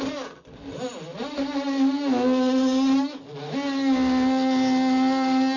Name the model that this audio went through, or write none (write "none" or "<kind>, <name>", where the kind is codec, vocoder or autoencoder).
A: none